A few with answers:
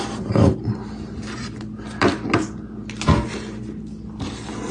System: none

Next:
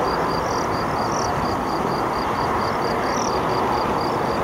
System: vocoder, BigVGAN v2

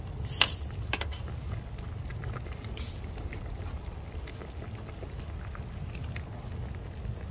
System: none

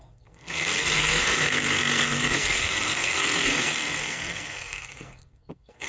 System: codec, SNAC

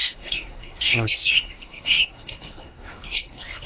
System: codec, SNAC